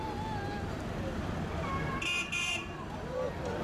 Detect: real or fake real